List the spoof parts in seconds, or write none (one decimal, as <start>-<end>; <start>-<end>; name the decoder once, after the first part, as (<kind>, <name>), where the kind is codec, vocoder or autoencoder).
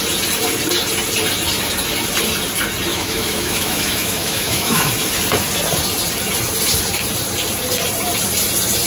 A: 2.9-4.9 (autoencoder, DAC-VAE)